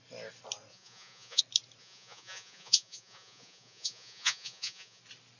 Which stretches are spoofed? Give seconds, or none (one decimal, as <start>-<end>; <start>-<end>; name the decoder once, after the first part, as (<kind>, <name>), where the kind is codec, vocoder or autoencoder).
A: 0.7-1.4 (vocoder, Vocos); 1.8-5.0